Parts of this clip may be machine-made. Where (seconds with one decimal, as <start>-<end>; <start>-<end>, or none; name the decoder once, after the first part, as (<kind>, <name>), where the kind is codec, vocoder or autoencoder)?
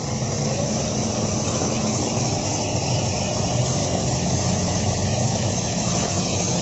1.6-2.4 (autoencoder, DAC-VAE); 3.8-6.6